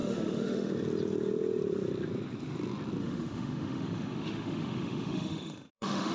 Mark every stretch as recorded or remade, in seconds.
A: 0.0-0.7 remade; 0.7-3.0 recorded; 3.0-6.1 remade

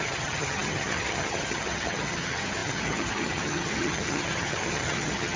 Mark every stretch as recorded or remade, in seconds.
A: 0.0-5.4 remade

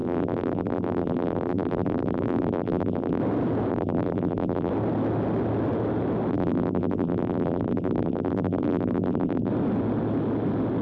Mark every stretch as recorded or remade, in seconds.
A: 0.0-3.2 remade; 3.2-3.7 recorded; 3.7-4.7 remade; 4.7-6.3 recorded; 6.3-9.5 remade; 9.5-10.8 recorded

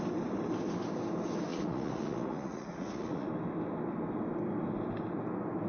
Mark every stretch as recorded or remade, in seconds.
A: 0.0-1.5 recorded; 1.5-3.3 remade; 3.3-5.7 recorded

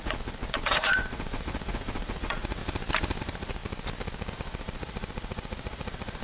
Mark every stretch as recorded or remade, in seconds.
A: 0.0-2.6 remade; 2.6-3.2 recorded; 3.2-3.6 remade; 3.6-4.3 recorded; 4.3-6.2 remade

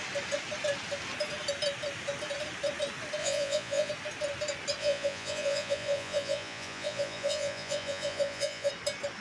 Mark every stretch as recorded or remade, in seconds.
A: 0.0-3.2 recorded; 3.2-3.9 remade; 3.9-4.8 recorded; 4.8-8.7 remade; 8.7-9.2 recorded

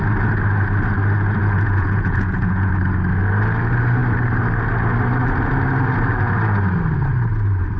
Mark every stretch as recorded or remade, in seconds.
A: 0.0-1.4 recorded; 1.4-2.7 remade; 2.7-7.8 recorded